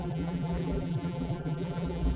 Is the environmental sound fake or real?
fake